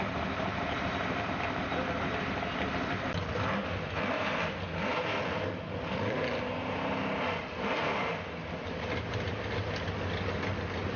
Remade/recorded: recorded